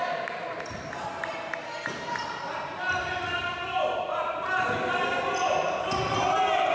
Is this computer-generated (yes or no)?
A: no